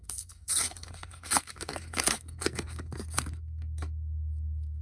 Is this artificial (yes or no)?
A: yes